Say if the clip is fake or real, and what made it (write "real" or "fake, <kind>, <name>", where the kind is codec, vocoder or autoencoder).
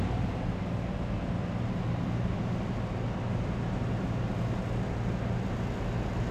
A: real